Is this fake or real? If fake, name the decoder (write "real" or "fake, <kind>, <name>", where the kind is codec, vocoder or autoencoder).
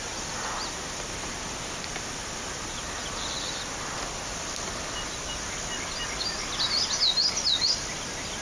real